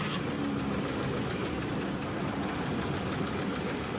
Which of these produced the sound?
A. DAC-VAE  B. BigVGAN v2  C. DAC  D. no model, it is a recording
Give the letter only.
D